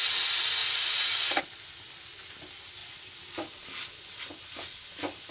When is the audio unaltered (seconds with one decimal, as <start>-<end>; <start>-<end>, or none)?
0.0-0.6; 1.4-5.3